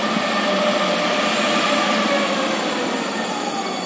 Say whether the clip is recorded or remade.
recorded